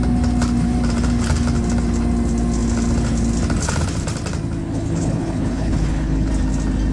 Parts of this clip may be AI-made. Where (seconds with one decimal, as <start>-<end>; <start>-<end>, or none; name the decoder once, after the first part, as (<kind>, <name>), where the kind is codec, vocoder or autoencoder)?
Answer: 4.6-6.3 (codec, HILCodec)